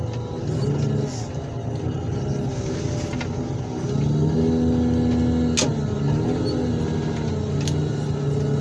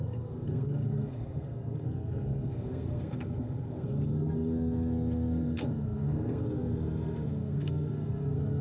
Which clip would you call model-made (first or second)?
second